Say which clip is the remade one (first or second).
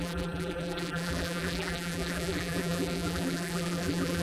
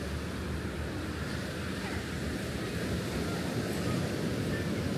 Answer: first